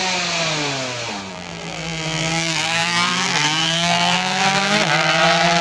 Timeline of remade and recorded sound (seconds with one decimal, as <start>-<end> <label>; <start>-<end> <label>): 0.0-1.3 recorded; 1.3-5.6 remade